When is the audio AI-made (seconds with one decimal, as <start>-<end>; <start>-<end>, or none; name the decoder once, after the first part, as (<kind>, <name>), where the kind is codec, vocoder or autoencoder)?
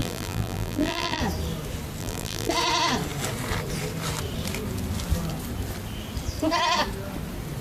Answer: 0.0-1.2 (vocoder, BigVGAN v2); 2.0-2.5